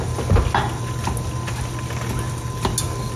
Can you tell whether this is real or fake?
real